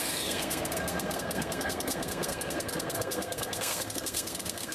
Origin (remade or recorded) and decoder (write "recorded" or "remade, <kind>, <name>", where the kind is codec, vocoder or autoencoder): remade, codec, SNAC